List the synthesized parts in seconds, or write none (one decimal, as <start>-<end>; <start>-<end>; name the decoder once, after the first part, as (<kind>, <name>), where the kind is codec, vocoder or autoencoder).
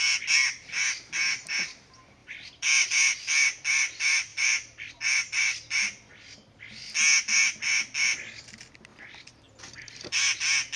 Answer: 2.2-2.9 (vocoder, BigVGAN v2); 4.3-5.8; 8.9-10.2